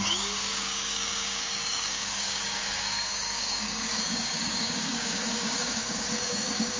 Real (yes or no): no